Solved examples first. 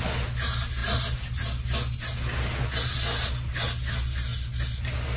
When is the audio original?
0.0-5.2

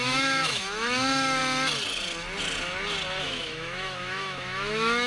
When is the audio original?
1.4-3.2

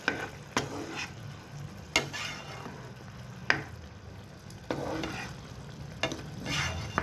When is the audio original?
0.0-7.0